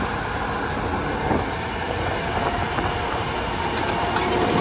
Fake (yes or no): no